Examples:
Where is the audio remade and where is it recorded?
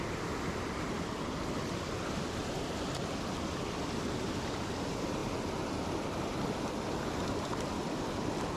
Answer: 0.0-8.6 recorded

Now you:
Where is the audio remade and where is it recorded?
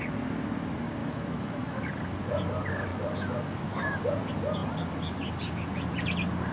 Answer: 0.0-1.0 recorded; 1.0-1.9 remade; 1.9-2.9 recorded; 2.9-4.0 remade; 4.0-6.5 recorded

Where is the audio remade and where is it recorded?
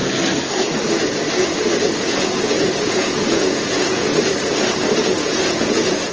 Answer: 0.0-2.0 recorded; 2.0-4.1 remade; 4.1-5.0 recorded; 5.0-6.1 remade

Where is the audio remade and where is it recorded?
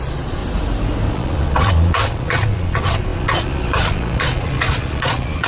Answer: 0.0-0.4 remade; 0.4-1.1 recorded; 1.1-5.5 remade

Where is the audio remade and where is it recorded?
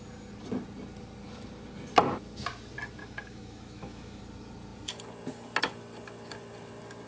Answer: 0.0-3.0 recorded; 3.0-4.2 remade; 4.2-7.1 recorded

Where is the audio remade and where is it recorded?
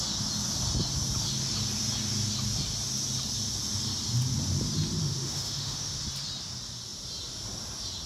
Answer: 0.0-5.0 recorded; 5.0-6.0 remade; 6.0-8.1 recorded